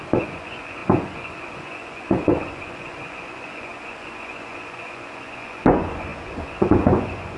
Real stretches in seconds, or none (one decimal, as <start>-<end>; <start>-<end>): none